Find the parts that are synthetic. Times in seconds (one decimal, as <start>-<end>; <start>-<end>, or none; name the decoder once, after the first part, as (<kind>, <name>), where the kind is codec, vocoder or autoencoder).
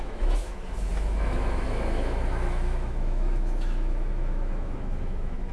0.0-5.5 (autoencoder, DAC-VAE)